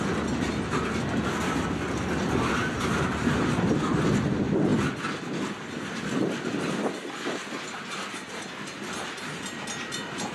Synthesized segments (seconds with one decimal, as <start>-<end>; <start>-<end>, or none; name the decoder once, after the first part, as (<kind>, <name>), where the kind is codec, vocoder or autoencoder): none